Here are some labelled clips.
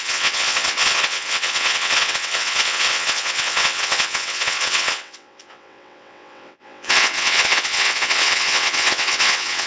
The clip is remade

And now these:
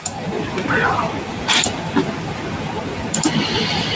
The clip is remade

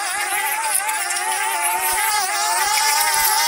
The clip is recorded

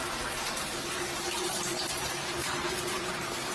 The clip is remade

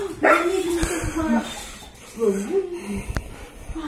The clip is recorded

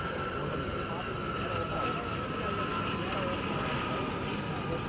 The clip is recorded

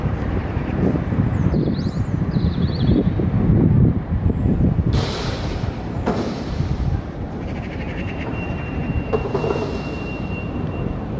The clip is remade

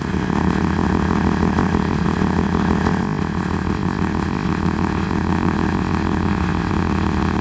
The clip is remade